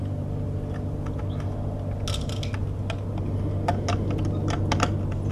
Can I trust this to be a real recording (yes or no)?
yes